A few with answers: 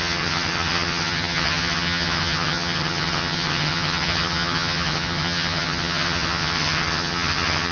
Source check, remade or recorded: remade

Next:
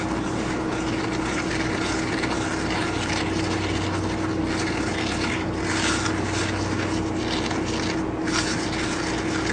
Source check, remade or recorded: recorded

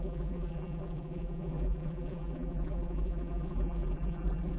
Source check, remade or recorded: remade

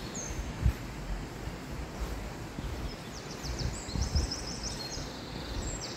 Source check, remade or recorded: remade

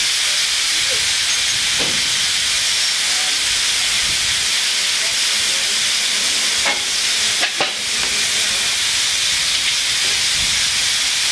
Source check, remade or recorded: recorded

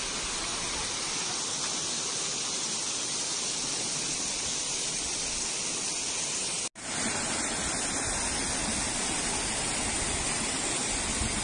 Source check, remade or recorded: recorded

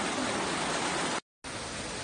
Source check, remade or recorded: recorded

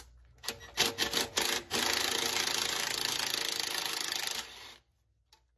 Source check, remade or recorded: recorded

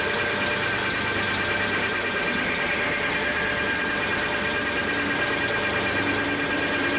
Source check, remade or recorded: recorded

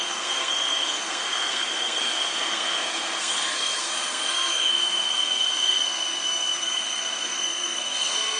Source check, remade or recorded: remade